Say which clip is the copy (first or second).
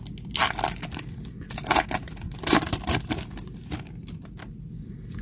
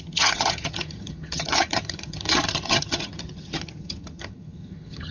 second